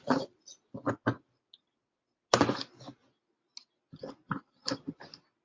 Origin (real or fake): real